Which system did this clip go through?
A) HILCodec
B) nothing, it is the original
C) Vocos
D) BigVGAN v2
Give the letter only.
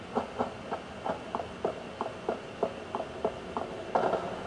B